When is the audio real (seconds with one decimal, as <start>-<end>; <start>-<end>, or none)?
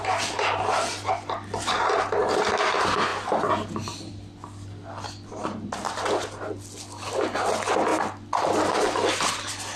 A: 0.0-9.8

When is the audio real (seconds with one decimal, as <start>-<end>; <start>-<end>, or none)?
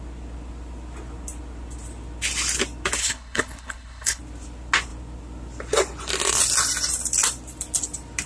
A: 0.0-3.0; 4.2-8.3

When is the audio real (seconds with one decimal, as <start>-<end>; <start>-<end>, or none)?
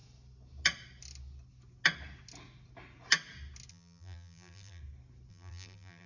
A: 0.0-3.7; 4.8-5.3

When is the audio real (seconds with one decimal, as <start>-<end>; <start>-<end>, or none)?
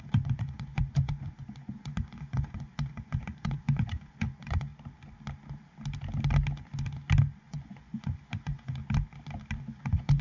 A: 4.7-7.4; 8.8-9.6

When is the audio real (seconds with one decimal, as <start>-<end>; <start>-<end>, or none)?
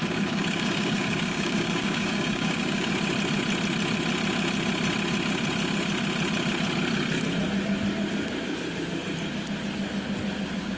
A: 2.9-10.8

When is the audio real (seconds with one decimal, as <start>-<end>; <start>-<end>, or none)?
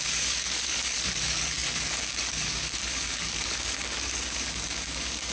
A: none